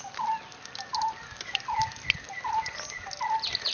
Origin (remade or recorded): recorded